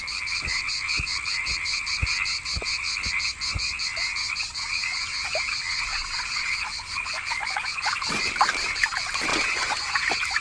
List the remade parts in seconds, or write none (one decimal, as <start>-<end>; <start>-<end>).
5.9-8.2; 9.3-9.9